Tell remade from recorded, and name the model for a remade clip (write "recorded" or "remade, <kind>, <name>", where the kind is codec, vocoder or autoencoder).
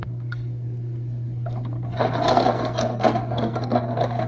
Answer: remade, codec, SNAC